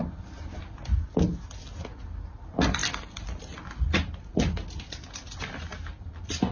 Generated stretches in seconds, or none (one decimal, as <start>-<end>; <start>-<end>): none